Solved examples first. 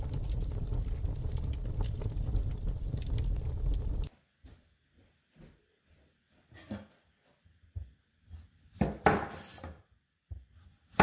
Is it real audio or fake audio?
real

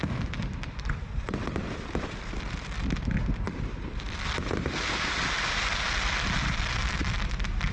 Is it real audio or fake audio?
fake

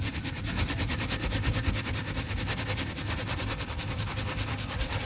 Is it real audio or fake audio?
real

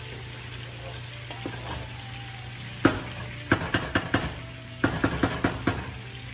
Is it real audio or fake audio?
real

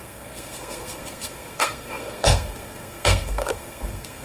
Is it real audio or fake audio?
fake